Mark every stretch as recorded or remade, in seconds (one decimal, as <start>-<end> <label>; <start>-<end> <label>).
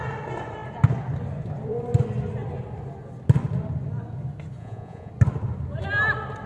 0.0-4.6 recorded; 4.6-5.1 remade; 5.1-6.5 recorded